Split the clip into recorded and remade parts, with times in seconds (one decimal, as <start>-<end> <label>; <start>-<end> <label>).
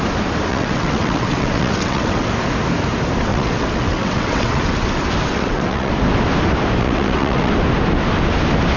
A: 0.0-0.5 recorded; 0.5-2.3 remade; 2.3-3.3 recorded; 3.3-4.6 remade; 4.6-5.3 recorded; 5.3-5.9 remade; 5.9-6.8 recorded; 6.8-7.5 remade; 7.5-8.8 recorded